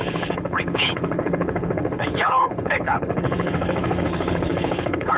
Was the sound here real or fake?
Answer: fake